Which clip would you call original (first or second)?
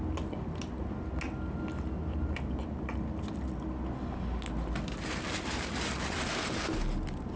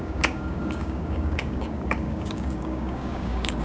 first